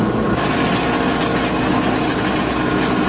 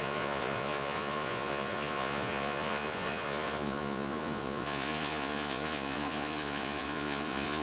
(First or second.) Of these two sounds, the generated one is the second